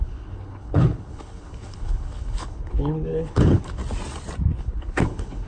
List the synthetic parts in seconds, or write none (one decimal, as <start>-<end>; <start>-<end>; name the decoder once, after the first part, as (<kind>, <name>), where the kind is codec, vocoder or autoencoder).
0.0-3.8 (codec, HILCodec); 4.6-5.5